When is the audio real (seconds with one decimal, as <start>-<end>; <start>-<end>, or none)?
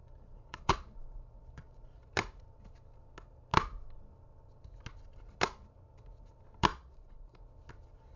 2.0-6.7; 7.4-8.2